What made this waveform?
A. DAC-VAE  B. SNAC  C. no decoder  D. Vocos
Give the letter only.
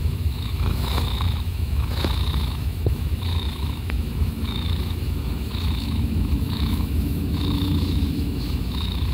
A